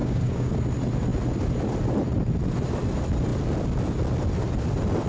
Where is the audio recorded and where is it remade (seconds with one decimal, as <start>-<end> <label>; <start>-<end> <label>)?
0.0-0.5 remade; 0.5-5.1 recorded